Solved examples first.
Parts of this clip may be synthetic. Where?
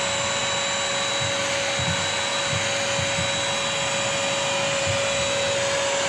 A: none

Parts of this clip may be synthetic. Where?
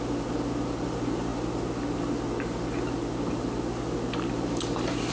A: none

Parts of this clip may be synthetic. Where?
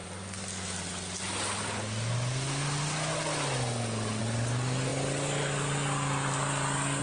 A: none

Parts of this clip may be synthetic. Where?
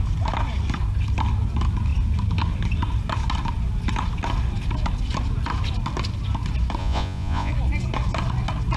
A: 6.8-7.5 (vocoder, Vocos)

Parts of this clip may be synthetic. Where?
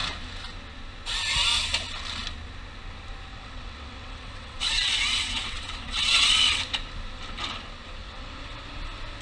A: 3.3-6.6 (vocoder, WaveNeXt); 8.0-8.6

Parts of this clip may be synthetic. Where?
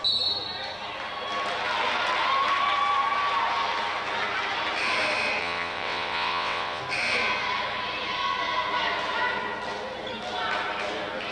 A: 5.4-6.8 (vocoder, WaveNeXt)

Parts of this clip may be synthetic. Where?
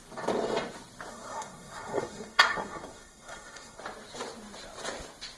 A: 1.1-3.8 (codec, SNAC)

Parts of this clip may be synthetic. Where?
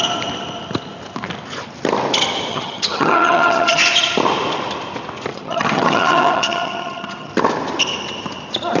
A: 2.5-3.8 (vocoder, HiFi-GAN); 5.3-7.3